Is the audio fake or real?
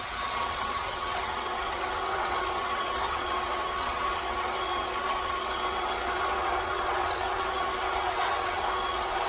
fake